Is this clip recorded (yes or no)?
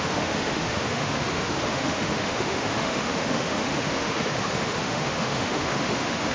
no